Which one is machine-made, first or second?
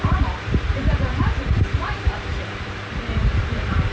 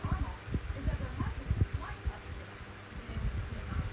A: first